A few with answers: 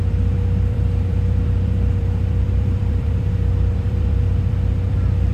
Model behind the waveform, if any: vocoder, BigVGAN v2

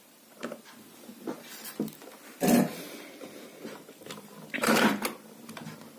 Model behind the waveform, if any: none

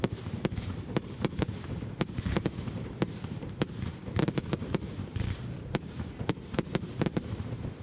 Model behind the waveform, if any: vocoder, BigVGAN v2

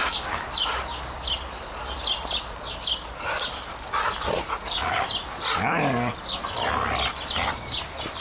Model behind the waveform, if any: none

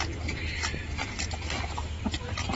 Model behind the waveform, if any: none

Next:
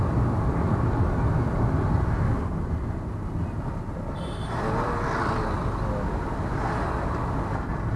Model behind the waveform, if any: none